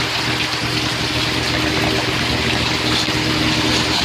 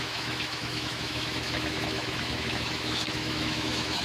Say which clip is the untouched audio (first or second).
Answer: first